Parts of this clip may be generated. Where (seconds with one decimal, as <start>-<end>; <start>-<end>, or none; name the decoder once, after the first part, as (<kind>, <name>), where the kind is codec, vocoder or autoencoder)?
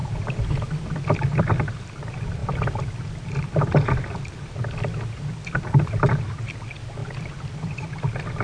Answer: none